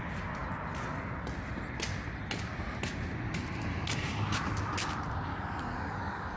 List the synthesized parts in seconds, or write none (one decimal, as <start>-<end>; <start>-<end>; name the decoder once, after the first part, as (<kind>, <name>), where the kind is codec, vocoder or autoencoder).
5.3-6.4 (codec, DAC)